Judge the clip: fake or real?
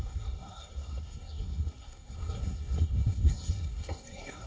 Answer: fake